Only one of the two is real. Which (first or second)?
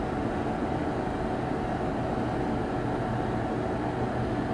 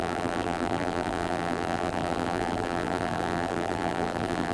first